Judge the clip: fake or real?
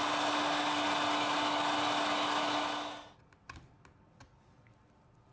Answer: real